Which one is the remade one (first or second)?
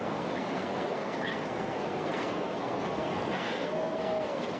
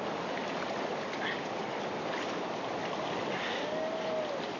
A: first